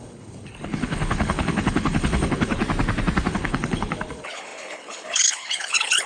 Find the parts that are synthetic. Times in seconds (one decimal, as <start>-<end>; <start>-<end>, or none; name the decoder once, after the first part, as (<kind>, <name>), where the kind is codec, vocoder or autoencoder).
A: 0.0-2.6 (codec, HILCodec); 3.3-6.1